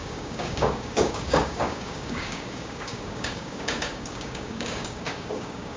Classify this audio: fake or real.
fake